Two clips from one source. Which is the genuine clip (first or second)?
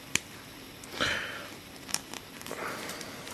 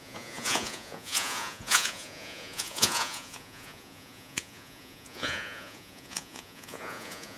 first